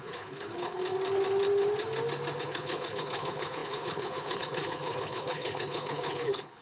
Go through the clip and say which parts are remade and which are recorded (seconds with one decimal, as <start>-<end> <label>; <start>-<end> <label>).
0.0-0.8 remade; 0.8-2.4 recorded; 2.4-6.6 remade